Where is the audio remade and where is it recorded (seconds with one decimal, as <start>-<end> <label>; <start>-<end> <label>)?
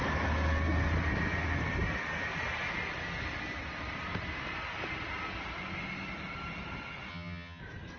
0.0-7.1 recorded; 7.1-7.6 remade; 7.6-8.0 recorded